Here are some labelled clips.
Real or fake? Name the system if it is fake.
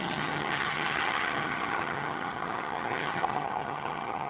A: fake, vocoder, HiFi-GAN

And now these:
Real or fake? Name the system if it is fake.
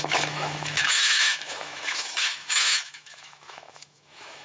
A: fake, autoencoder, DAC-VAE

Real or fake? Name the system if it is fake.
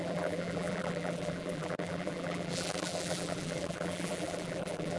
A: fake, vocoder, BigVGAN v2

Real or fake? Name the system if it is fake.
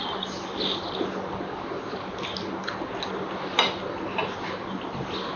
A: real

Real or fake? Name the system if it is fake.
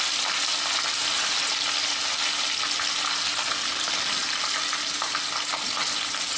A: real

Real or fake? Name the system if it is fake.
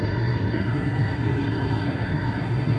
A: fake, codec, SNAC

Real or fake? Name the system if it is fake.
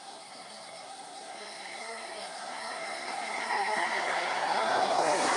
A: fake, codec, SNAC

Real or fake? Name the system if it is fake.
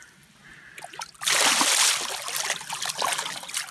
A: real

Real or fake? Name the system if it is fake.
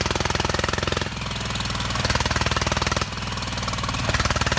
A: real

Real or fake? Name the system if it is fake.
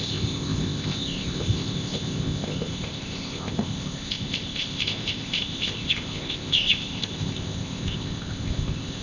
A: fake, codec, ZipCodec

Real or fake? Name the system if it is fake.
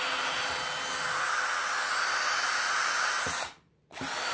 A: real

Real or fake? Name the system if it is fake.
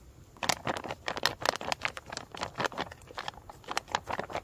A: real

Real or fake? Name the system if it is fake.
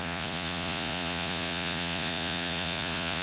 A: fake, vocoder, Vocos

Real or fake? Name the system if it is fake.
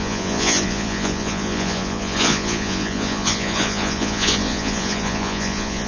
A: fake, vocoder, Vocos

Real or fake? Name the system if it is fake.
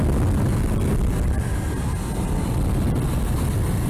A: real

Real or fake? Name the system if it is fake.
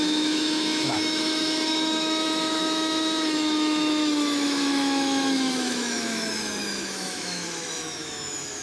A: fake, autoencoder, DAC-VAE